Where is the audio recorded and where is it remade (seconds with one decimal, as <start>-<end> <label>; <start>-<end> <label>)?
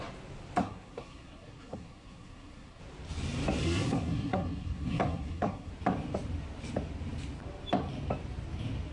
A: 0.0-0.6 recorded; 0.6-2.8 remade; 2.8-3.6 recorded; 3.6-5.7 remade; 5.7-8.9 recorded